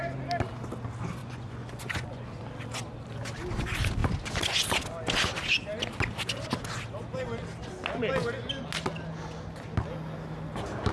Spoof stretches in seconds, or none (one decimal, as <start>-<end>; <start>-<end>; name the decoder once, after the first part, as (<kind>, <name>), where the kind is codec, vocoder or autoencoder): 1.2-2.4 (vocoder, Vocos)

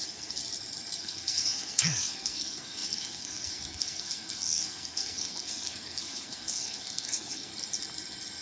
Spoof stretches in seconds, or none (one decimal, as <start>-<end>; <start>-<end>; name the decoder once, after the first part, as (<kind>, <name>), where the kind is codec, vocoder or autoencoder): 0.0-0.4 (codec, SNAC); 1.0-7.5

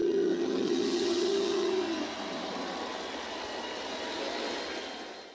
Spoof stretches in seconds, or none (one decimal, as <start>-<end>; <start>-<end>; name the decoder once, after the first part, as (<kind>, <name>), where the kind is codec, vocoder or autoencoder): 0.0-1.7 (vocoder, HiFi-GAN)

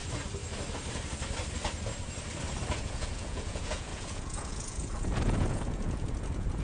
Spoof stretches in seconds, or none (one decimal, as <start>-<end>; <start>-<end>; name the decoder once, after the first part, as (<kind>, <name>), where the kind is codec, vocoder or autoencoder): 2.8-6.6 (vocoder, Vocos)